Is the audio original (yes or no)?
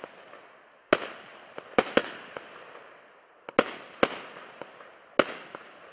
yes